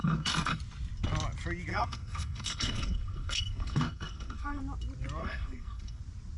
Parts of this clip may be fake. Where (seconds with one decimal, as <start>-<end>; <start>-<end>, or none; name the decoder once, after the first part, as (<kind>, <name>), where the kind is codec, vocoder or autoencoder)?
0.0-0.6 (codec, SNAC); 1.7-4.6; 5.2-6.0